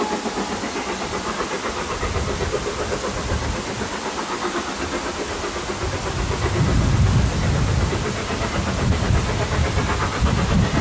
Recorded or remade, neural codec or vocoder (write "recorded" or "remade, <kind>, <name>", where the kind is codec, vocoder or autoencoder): recorded